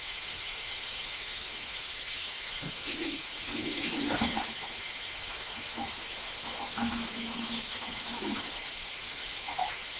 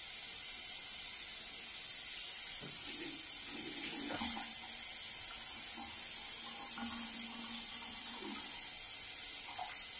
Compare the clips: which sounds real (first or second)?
second